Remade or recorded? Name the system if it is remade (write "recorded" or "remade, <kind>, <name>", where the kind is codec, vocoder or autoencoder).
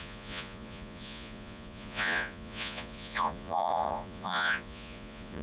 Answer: remade, vocoder, Vocos